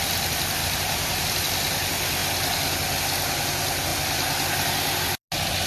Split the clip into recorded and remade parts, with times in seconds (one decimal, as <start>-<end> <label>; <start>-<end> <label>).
0.0-0.6 recorded; 0.6-1.2 remade; 1.2-5.7 recorded

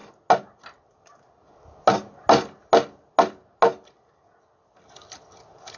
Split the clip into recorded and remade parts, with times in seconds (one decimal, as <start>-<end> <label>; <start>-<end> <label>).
0.0-5.8 recorded

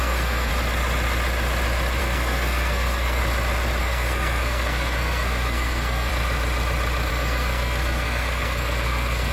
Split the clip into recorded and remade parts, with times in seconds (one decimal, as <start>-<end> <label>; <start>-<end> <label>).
0.0-0.5 remade; 0.5-2.0 recorded; 2.0-3.2 remade; 3.2-3.8 recorded; 3.8-6.1 remade; 6.1-7.1 recorded; 7.1-9.3 remade

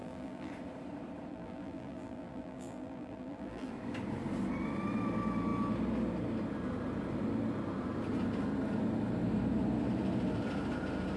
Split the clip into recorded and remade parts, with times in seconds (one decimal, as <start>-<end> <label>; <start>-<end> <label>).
0.0-0.5 remade; 0.5-1.3 recorded; 1.3-3.7 remade; 3.7-11.2 recorded

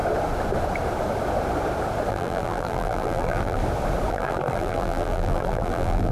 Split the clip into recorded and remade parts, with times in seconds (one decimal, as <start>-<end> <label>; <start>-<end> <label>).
0.0-2.1 recorded; 2.1-3.6 remade; 3.6-4.1 recorded; 4.1-6.1 remade

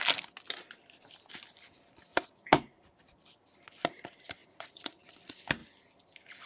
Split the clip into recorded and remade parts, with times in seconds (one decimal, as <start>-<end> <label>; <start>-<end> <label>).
0.0-2.1 recorded; 2.1-2.9 remade; 2.9-4.4 recorded; 4.4-5.1 remade; 5.1-6.5 recorded